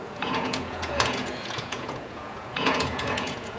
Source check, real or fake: fake